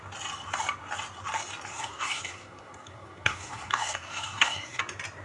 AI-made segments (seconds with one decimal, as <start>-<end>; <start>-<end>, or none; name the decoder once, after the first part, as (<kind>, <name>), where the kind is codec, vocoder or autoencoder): 1.7-4.8 (codec, SNAC)

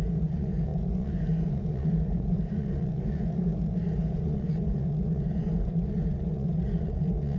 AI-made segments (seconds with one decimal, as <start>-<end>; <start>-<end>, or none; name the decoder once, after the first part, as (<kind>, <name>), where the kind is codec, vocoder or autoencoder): 0.0-3.5 (vocoder, Vocos); 4.0-7.4